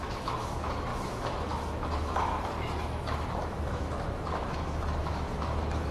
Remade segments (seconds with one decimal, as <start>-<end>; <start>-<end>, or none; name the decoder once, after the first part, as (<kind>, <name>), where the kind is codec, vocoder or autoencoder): 0.0-5.9 (autoencoder, DAC-VAE)

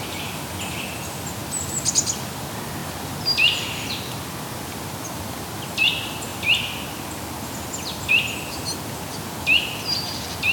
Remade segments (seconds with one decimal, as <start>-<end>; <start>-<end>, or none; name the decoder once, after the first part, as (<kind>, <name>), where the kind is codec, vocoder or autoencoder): none